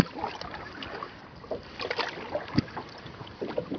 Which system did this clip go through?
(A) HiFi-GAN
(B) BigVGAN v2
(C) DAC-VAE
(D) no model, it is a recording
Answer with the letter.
D